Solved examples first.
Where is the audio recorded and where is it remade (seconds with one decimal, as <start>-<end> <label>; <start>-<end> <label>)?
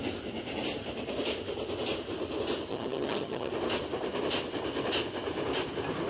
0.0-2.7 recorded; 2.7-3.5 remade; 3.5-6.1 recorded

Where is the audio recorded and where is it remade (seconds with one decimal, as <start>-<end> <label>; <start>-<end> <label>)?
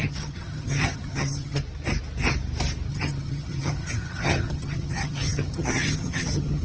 0.0-1.6 remade; 1.6-2.9 recorded; 2.9-6.6 remade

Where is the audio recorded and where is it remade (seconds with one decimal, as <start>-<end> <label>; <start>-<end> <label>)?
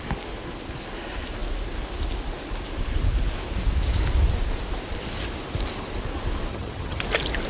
0.0-6.5 recorded; 6.5-7.0 remade; 7.0-7.5 recorded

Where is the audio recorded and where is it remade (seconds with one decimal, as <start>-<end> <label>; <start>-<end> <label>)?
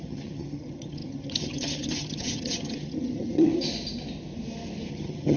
0.0-3.5 remade; 3.5-4.9 recorded; 4.9-5.4 remade